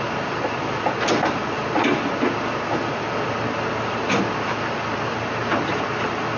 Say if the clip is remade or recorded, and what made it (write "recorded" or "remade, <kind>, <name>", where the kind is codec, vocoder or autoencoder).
recorded